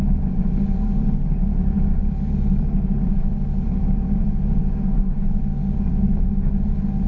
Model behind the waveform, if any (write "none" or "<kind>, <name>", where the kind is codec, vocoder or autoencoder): none